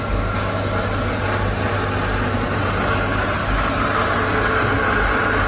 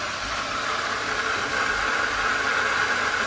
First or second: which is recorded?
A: first